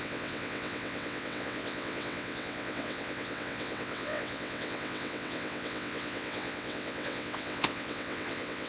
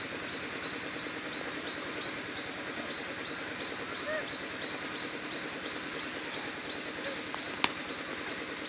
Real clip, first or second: second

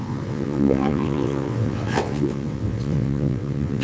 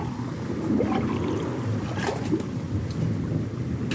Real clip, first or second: second